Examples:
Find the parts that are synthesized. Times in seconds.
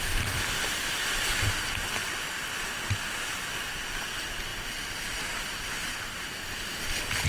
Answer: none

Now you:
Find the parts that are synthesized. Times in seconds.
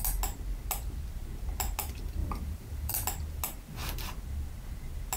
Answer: 2.2-2.9 (vocoder, BigVGAN v2)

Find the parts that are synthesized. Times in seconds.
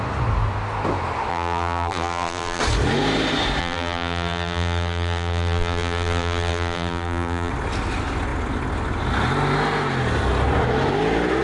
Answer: 1.3-2.6 (vocoder, BigVGAN v2); 3.6-7.5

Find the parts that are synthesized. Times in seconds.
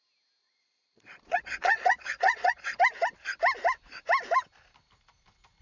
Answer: 0.4-2.8 (vocoder, Vocos)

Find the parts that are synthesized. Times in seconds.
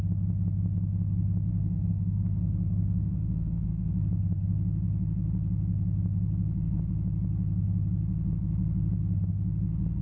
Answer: 1.5-3.9 (codec, SNAC)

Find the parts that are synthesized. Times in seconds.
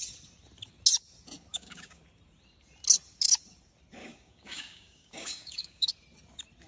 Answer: 1.5-2.0 (codec, DAC); 4.0-5.9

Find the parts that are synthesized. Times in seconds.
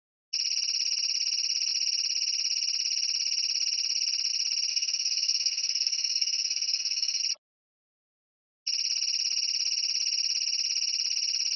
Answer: 4.7-7.2 (codec, SNAC)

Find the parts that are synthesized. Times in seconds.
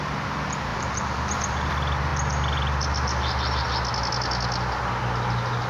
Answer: 0.7-1.7 (vocoder, BigVGAN v2)